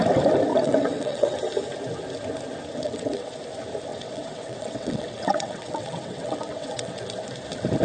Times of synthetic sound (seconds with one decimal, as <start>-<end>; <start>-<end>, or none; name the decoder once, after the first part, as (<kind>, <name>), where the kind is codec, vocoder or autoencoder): 0.5-1.4 (vocoder, WaveNeXt); 2.7-3.3; 3.9-7.0